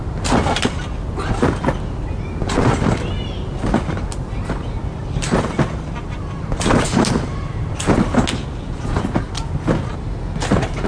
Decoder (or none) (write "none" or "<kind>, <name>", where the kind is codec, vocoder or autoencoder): none